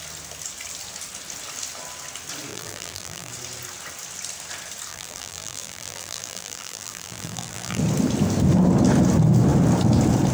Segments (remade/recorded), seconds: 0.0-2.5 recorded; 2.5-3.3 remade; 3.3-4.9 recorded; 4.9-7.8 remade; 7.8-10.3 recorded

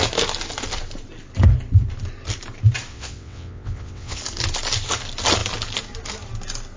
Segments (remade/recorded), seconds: 0.0-2.9 recorded; 2.9-4.2 remade; 4.2-6.8 recorded